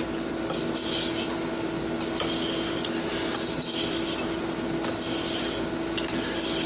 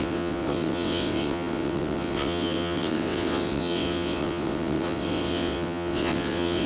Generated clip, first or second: second